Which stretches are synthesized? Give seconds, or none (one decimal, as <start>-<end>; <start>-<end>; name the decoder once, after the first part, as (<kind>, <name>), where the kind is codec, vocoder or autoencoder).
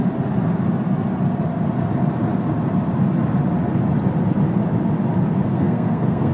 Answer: 5.5-6.3 (codec, SNAC)